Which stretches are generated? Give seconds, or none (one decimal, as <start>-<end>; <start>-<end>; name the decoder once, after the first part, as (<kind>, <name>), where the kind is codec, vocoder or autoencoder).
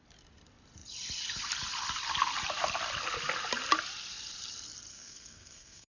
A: 4.9-6.0 (codec, SNAC)